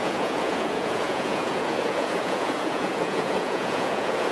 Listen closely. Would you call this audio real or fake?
fake